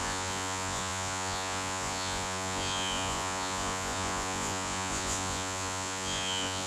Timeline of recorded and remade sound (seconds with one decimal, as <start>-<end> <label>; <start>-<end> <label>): 0.0-6.7 remade